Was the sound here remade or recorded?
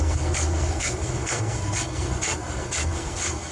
remade